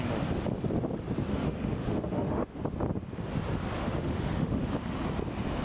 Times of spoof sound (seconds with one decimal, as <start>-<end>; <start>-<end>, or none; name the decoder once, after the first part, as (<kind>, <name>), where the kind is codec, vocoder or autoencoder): 1.3-2.6 (autoencoder, DAC-VAE); 3.8-4.7